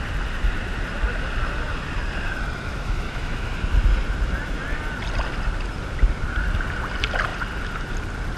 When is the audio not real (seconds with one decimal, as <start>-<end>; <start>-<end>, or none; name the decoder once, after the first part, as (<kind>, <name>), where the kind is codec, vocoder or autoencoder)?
2.7-3.5 (autoencoder, DAC-VAE)